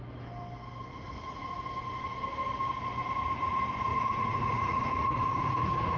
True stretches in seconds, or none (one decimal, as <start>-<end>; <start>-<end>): 0.0-0.9; 1.5-3.9; 5.6-6.0